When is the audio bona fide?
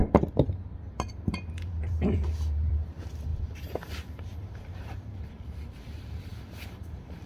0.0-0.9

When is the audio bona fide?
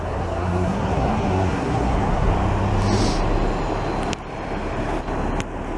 2.3-5.8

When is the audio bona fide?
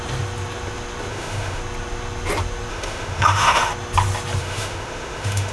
0.0-1.1; 1.6-2.7; 3.7-4.4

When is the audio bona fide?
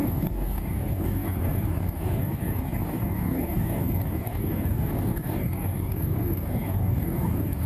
none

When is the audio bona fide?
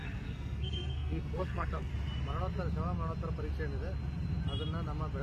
1.9-5.2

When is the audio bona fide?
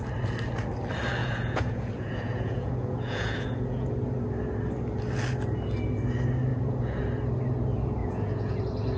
0.0-1.2; 3.9-6.5; 7.0-8.0; 8.6-9.0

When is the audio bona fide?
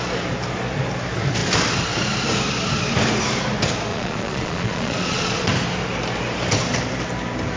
0.0-3.9; 5.5-7.6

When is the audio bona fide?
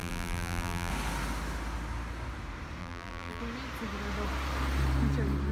0.9-2.8; 3.4-5.5